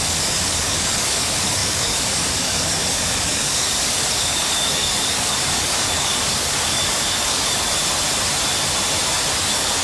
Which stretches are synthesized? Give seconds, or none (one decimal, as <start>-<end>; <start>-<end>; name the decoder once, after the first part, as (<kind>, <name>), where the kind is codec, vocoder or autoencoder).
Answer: 0.0-7.8 (codec, DAC); 9.4-9.8

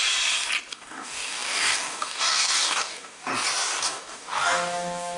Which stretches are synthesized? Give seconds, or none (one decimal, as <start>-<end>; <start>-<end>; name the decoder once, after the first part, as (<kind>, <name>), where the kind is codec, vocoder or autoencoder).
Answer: 0.7-3.3 (codec, DAC); 3.8-5.2

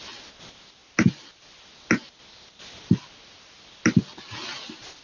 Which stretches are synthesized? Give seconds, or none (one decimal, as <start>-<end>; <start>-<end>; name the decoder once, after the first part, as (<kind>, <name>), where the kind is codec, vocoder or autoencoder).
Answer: none